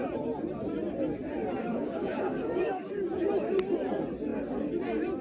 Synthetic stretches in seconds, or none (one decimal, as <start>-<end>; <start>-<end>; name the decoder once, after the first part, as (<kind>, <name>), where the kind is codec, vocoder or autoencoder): 1.6-2.9 (codec, DAC)